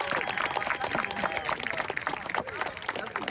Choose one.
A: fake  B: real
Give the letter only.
B